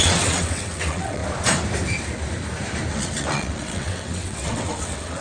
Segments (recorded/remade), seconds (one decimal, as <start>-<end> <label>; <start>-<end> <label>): 0.0-1.2 remade; 1.2-2.9 recorded; 2.9-5.2 remade

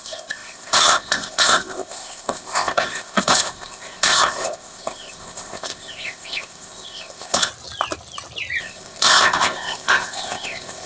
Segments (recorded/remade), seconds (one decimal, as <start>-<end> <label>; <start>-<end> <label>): 0.0-7.5 remade; 7.5-8.6 recorded; 8.6-10.9 remade

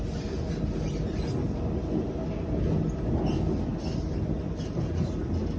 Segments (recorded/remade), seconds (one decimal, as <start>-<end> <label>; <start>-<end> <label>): 0.0-5.6 recorded

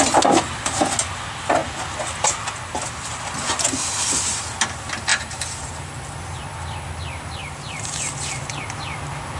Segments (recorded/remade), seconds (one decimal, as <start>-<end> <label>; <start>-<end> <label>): 0.0-5.1 recorded; 5.1-5.9 remade; 5.9-7.4 recorded; 7.4-8.2 remade; 8.2-9.4 recorded